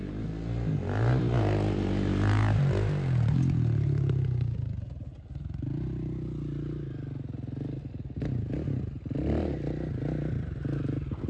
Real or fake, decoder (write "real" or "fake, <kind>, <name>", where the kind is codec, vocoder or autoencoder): real